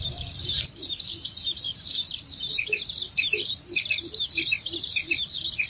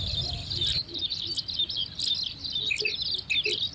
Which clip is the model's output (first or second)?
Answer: first